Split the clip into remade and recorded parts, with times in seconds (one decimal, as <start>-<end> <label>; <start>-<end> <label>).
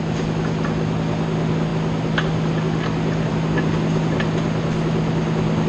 0.0-5.7 recorded